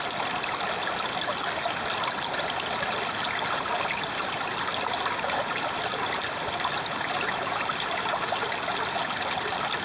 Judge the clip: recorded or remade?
recorded